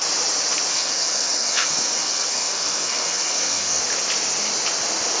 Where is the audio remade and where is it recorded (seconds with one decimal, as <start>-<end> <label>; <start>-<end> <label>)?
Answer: 0.0-0.7 recorded; 0.7-3.8 remade; 3.8-5.2 recorded